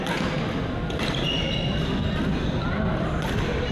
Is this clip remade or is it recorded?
recorded